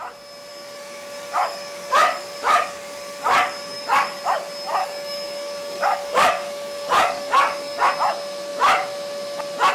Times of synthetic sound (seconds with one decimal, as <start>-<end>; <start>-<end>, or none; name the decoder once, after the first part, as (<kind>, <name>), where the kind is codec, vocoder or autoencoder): 0.5-4.2 (codec, DAC); 4.8-7.9